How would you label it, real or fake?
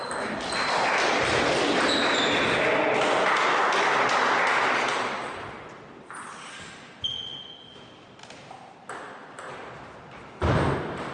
real